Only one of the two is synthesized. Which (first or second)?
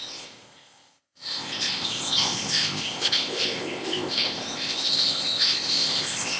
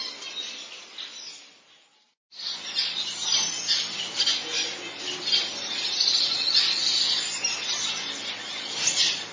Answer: first